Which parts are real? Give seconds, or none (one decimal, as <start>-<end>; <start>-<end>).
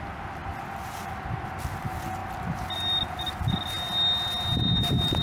0.0-5.2